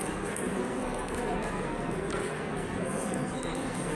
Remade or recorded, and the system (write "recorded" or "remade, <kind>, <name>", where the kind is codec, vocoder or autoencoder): remade, codec, SNAC